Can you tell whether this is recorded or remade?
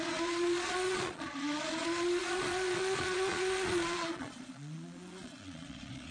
remade